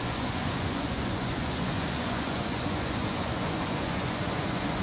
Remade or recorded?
remade